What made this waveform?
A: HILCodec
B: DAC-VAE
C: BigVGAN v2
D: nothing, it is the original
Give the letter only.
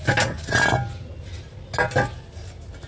D